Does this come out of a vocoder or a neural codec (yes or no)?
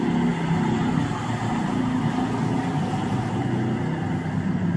no